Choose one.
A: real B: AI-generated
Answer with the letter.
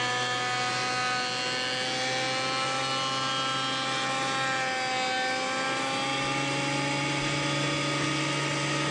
A